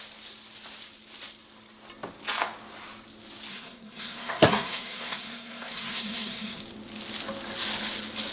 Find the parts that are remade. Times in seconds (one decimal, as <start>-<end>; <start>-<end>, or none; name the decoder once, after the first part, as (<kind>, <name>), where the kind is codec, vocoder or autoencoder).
3.5-6.6 (codec, SNAC)